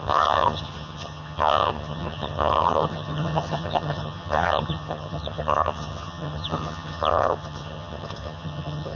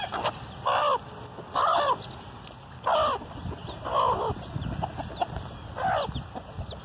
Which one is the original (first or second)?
second